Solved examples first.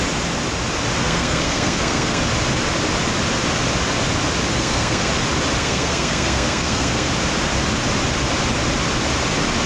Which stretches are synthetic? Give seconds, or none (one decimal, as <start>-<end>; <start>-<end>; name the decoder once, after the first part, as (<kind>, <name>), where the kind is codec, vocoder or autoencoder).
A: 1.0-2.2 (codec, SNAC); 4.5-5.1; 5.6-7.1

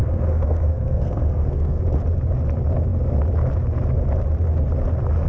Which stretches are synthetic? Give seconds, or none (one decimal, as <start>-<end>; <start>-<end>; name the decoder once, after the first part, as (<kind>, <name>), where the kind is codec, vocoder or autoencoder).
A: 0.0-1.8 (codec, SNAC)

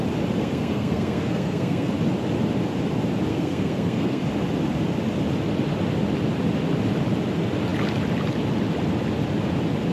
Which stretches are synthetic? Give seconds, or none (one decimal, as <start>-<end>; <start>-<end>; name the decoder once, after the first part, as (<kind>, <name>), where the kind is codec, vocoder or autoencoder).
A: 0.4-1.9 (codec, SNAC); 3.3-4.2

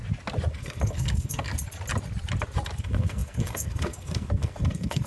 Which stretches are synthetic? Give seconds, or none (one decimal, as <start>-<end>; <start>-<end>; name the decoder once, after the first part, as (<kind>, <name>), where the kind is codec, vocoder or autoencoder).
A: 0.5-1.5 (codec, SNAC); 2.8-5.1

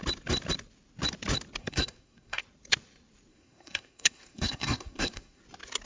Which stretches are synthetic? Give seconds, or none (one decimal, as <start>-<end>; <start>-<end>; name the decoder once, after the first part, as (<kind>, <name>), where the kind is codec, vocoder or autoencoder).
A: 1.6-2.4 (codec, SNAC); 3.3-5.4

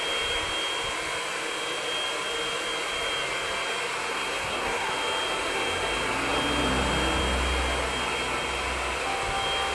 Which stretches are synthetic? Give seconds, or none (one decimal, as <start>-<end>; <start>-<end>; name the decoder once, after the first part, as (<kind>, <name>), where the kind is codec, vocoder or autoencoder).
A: 4.1-4.9 (codec, SNAC)

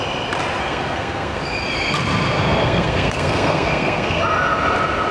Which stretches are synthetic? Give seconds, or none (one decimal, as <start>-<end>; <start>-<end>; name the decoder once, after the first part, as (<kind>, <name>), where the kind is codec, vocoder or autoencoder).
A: 0.6-1.4 (codec, SNAC); 2.6-4.2